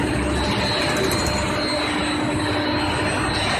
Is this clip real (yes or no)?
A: yes